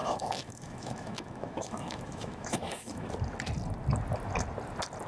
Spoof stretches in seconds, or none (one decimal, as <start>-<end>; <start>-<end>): 0.0-3.1